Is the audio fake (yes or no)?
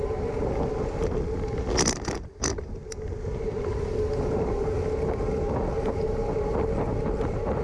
no